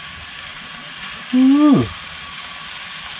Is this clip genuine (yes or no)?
yes